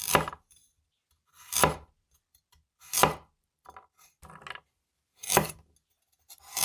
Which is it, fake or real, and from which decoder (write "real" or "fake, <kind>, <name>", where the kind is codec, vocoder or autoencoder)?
real